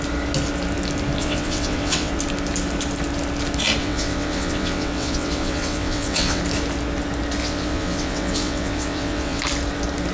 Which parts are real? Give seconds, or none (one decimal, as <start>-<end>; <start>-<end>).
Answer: 0.0-1.2; 2.1-3.8; 6.4-7.4; 9.4-10.1